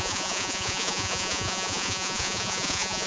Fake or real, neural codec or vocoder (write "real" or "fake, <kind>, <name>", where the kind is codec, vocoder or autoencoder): fake, vocoder, Vocos